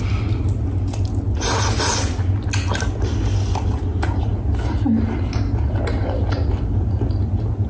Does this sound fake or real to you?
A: real